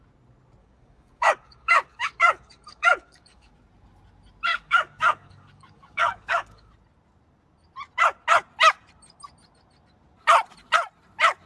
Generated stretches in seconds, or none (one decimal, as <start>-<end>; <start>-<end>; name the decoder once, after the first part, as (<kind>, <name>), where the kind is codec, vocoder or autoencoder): 0.6-3.5 (codec, DAC); 4.5-6.7